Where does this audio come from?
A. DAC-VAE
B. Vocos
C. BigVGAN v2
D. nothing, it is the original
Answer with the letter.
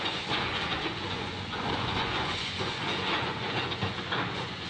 B